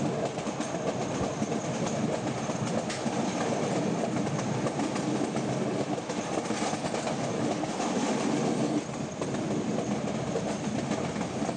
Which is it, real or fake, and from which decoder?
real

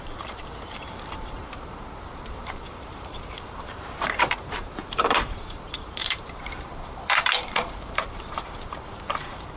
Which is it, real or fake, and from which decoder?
fake, vocoder, BigVGAN v2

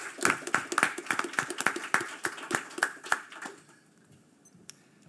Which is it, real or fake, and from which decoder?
real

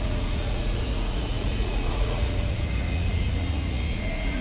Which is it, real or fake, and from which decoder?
fake, vocoder, Vocos